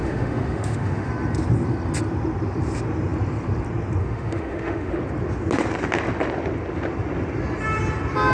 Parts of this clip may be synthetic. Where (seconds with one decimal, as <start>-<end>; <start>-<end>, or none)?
0.0-1.1; 4.0-4.9